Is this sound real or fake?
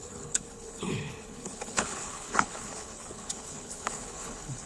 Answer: fake